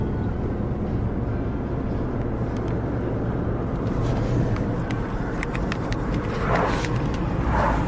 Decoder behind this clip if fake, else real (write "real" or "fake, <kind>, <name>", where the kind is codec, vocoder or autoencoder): real